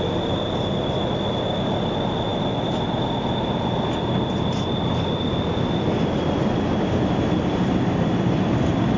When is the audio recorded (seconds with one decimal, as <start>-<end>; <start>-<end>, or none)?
0.0-9.0